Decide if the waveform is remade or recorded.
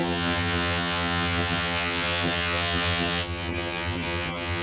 remade